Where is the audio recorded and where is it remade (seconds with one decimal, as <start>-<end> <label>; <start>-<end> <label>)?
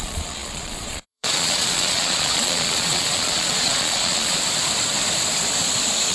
0.0-4.4 remade; 4.4-6.1 recorded